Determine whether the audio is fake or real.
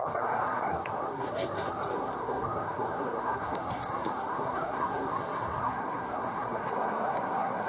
fake